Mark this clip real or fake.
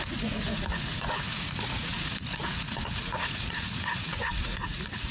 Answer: fake